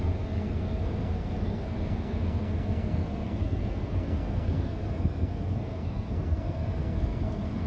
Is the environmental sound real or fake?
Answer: fake